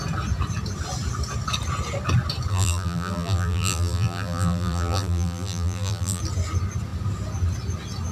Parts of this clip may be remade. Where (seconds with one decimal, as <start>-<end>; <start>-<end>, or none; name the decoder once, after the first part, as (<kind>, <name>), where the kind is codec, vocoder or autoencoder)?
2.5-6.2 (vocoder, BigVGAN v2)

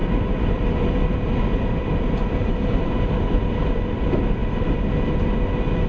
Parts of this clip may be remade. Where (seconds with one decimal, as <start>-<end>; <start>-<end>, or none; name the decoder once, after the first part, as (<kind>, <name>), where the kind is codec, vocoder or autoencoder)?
0.0-3.5 (vocoder, BigVGAN v2)

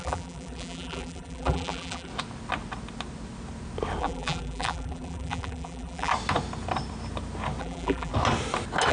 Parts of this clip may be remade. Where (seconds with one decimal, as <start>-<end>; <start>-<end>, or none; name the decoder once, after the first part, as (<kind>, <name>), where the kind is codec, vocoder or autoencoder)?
0.0-2.1 (vocoder, BigVGAN v2); 4.0-6.1; 7.6-8.1